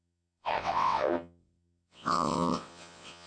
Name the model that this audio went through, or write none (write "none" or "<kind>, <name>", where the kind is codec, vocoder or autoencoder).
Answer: vocoder, WaveNeXt